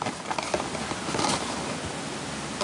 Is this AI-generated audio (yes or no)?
no